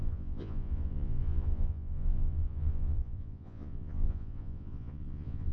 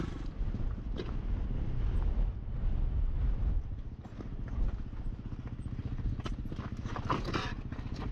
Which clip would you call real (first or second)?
second